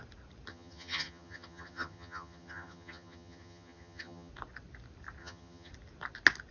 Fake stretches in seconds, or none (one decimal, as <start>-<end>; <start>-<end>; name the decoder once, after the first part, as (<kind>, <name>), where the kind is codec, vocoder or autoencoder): 0.5-4.3 (vocoder, HiFi-GAN); 5.2-5.7

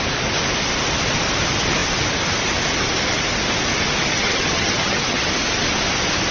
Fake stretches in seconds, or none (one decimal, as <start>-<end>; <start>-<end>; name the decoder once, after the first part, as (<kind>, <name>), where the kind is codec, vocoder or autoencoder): 4.1-5.3 (vocoder, HiFi-GAN)